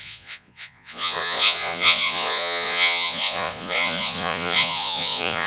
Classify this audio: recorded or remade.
remade